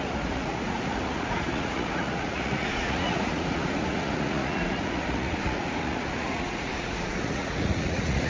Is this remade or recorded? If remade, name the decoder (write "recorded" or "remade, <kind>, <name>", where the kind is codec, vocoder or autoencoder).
remade, vocoder, Vocos